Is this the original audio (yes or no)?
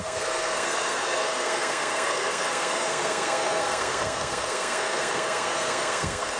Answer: no